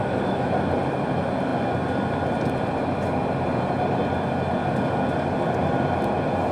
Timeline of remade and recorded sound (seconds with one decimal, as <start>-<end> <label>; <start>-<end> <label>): 0.0-0.5 remade; 0.5-6.5 recorded